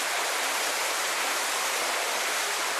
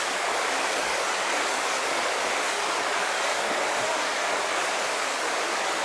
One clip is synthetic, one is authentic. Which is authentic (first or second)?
first